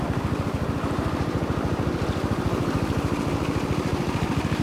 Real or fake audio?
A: fake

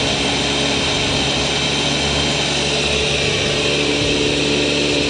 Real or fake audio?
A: real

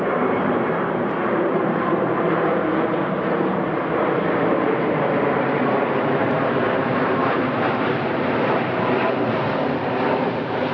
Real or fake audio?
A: fake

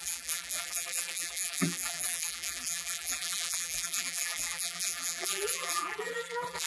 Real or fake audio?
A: fake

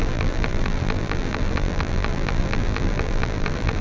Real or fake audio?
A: fake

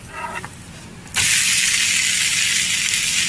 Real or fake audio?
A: real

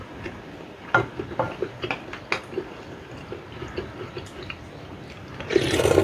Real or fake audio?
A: real